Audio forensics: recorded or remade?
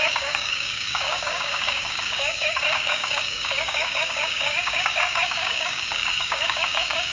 remade